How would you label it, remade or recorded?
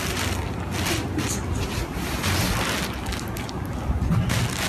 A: recorded